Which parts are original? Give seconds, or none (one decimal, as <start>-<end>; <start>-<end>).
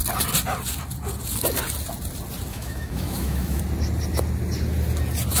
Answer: 0.0-2.5; 3.6-5.4